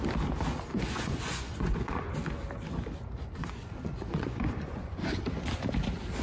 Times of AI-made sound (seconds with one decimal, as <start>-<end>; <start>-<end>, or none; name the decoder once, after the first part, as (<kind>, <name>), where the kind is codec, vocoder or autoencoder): 0.7-2.1 (vocoder, Vocos); 3.4-5.2